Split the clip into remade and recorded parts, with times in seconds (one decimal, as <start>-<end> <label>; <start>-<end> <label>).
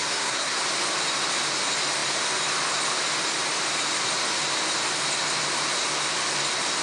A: 0.0-0.6 remade; 0.6-6.8 recorded